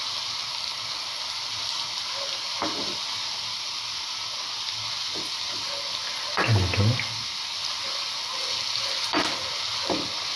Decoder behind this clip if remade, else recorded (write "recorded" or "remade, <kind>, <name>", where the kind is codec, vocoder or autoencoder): recorded